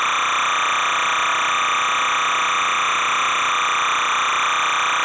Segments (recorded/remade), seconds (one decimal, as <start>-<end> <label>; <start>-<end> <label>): 0.0-5.0 recorded